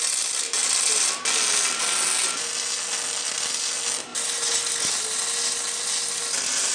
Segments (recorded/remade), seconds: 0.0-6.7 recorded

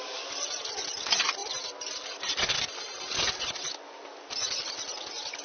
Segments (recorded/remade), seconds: 0.0-5.4 recorded

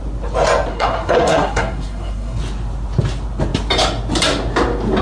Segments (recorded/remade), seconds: 0.0-0.7 recorded; 0.7-2.4 remade; 2.4-5.0 recorded

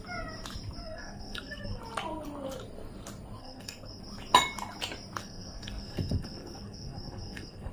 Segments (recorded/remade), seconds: 0.0-0.8 recorded; 0.8-1.8 remade; 1.8-3.4 recorded; 3.4-4.0 remade; 4.0-5.2 recorded; 5.2-7.7 remade